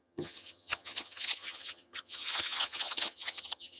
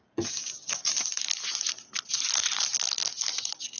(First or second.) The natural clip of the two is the second